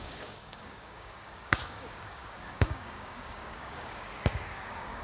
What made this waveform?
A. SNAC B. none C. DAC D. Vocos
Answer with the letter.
C